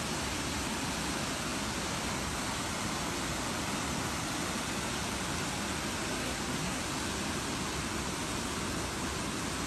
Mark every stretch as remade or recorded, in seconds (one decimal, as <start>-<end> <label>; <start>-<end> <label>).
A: 0.0-6.2 recorded; 6.2-6.8 remade; 6.8-9.7 recorded